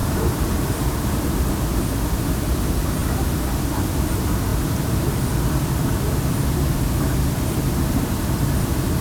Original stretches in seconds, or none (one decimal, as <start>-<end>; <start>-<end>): 1.5-4.5; 7.8-9.0